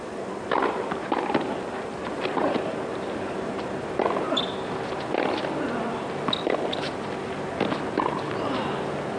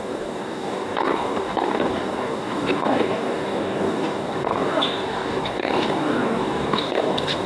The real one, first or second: first